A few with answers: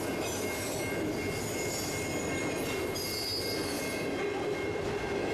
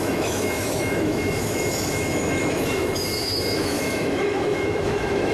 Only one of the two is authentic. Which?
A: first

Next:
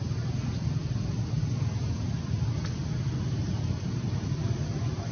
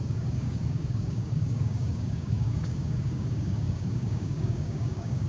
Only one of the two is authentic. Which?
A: first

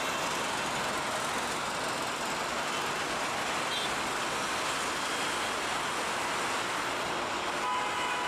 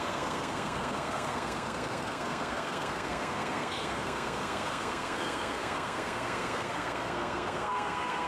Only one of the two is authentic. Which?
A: first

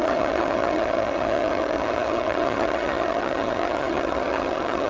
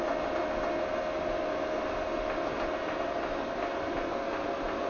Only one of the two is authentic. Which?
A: second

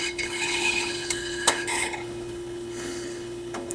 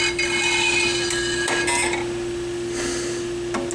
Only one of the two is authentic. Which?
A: second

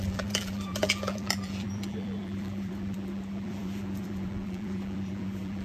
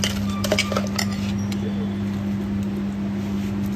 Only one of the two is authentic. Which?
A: second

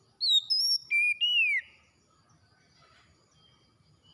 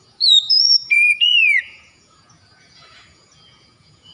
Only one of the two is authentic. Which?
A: first